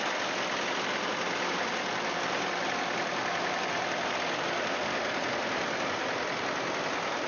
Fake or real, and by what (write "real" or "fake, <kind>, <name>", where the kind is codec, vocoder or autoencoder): real